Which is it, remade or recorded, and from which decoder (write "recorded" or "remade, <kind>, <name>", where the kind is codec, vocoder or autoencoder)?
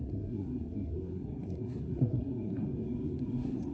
remade, codec, SNAC